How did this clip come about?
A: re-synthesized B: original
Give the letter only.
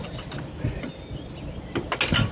B